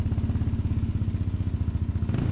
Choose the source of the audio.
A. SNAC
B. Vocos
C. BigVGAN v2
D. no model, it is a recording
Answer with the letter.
D